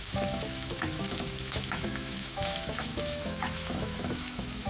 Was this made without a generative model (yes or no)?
no